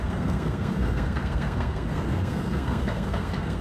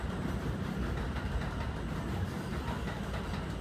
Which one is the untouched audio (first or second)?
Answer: second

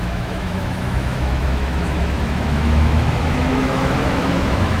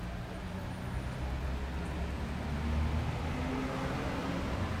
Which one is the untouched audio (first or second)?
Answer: second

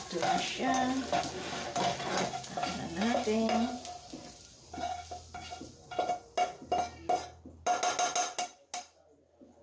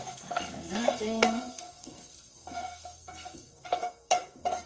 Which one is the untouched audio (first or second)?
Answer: first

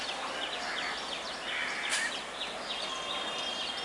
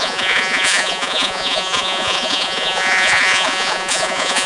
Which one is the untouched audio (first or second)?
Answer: first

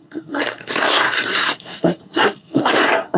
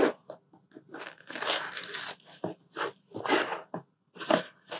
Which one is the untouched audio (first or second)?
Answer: second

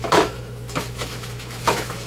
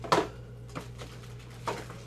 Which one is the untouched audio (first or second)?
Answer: second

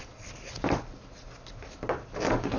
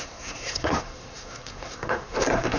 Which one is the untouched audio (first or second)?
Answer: first